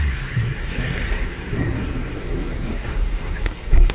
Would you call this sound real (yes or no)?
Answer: no